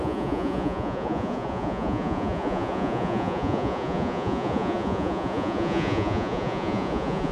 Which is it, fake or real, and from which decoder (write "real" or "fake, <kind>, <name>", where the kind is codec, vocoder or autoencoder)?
fake, vocoder, Vocos